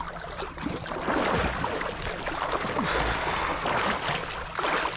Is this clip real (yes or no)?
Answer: yes